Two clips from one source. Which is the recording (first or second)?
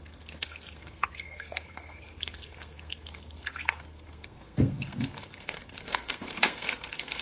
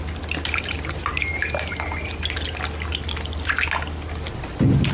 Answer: second